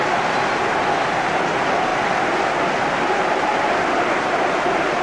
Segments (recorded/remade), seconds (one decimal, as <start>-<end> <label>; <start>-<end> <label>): 0.0-5.0 recorded